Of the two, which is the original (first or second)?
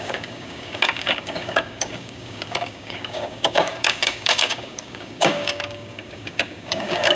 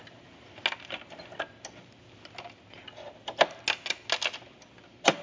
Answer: second